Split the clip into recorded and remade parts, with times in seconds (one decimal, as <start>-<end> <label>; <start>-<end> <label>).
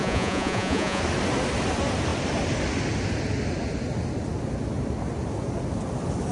0.0-1.0 remade; 1.0-6.3 recorded